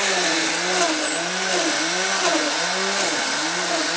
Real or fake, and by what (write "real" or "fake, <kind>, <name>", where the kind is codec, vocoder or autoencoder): real